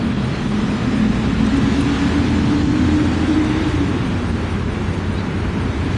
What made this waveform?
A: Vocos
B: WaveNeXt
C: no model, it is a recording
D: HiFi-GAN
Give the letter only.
C